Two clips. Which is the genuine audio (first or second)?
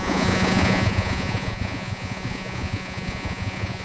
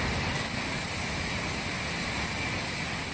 second